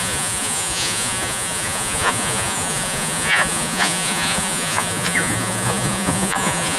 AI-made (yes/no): yes